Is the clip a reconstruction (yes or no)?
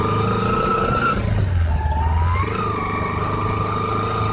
no